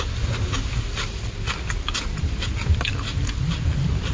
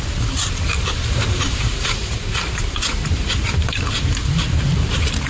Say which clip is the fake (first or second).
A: second